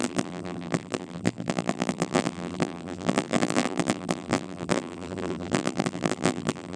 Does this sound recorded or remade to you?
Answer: remade